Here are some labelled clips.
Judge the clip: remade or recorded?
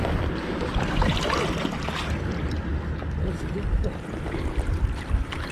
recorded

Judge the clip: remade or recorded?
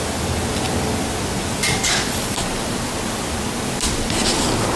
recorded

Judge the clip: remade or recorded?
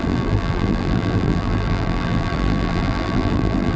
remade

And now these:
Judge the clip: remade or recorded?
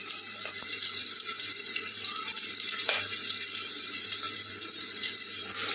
remade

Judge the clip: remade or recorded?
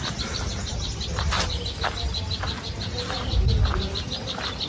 recorded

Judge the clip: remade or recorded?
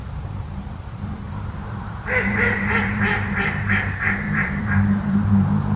remade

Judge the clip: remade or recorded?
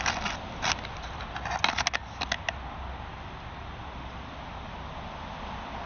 recorded